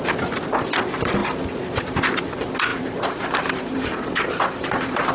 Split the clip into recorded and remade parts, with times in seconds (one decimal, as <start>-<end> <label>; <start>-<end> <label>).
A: 0.0-2.7 recorded; 2.7-5.1 remade